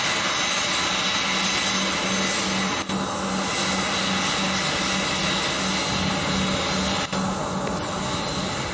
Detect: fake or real real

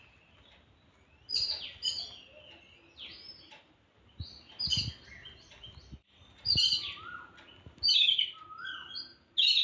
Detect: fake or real real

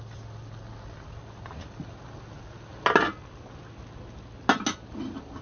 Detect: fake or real real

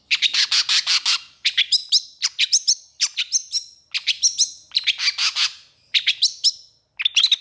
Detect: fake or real real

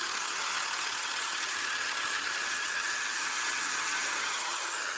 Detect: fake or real fake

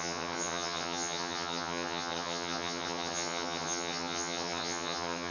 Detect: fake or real fake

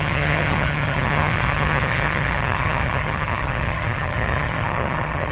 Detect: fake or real fake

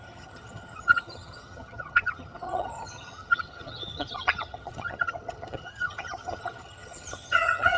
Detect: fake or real fake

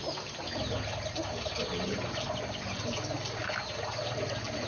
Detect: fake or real real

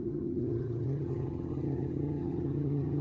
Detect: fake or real fake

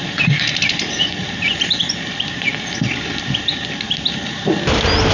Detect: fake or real real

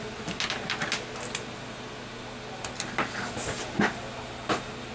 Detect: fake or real real